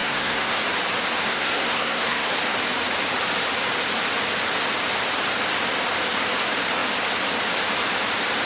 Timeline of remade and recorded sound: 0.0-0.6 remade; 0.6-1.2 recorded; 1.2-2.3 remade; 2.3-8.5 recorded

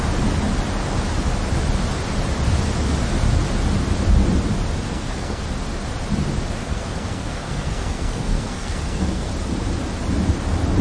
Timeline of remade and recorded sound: 0.0-4.9 recorded; 4.9-5.4 remade; 5.4-6.6 recorded; 6.6-9.3 remade; 9.3-10.8 recorded